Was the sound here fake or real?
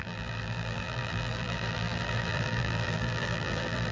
fake